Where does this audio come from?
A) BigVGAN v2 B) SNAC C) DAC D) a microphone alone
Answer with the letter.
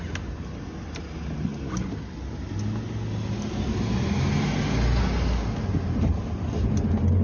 D